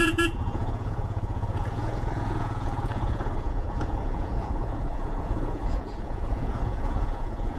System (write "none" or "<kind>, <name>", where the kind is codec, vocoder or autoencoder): vocoder, Vocos